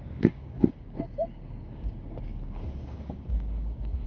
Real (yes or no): no